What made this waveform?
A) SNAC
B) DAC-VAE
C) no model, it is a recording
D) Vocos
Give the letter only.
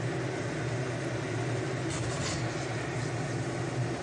C